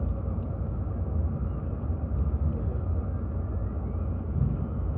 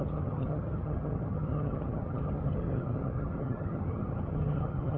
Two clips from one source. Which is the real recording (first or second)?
first